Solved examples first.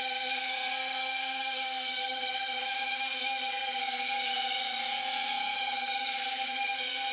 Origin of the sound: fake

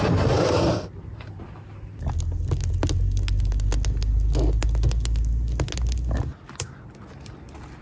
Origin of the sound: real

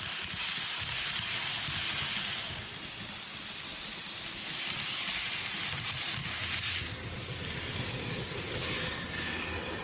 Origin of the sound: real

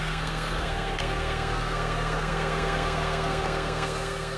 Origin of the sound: fake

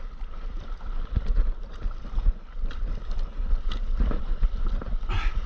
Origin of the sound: real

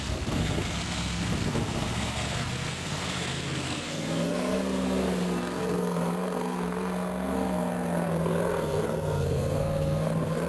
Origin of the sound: fake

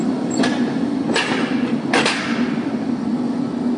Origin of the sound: real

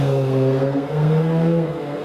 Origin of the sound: fake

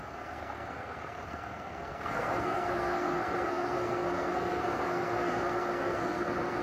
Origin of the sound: fake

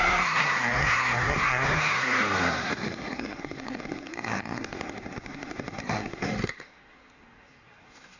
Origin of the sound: fake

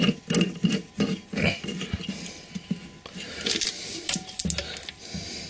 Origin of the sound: real